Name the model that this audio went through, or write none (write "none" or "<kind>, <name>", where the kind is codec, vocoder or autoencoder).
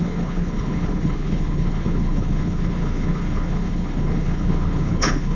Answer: codec, HILCodec